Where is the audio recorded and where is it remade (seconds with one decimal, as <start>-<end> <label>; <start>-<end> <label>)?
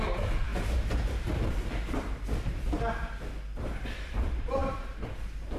0.0-4.6 remade; 4.6-5.6 recorded